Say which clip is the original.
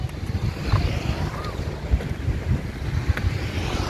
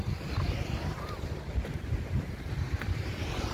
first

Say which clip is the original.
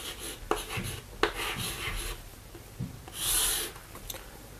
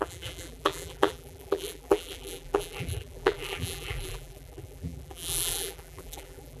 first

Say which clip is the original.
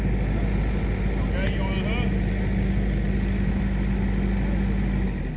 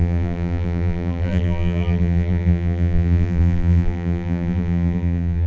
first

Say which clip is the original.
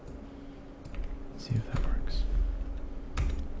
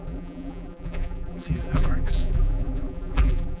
first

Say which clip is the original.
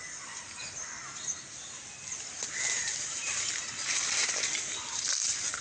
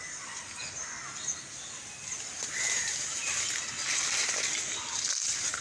second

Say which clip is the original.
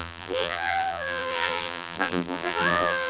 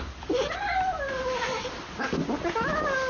second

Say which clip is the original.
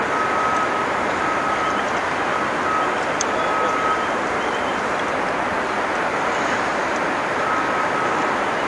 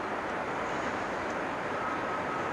first